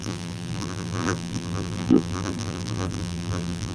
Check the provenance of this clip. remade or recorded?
remade